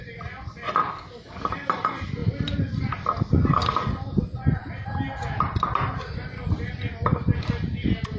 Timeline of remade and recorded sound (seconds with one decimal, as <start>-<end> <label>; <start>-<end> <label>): 0.0-0.8 recorded; 0.8-1.5 remade; 1.5-8.2 recorded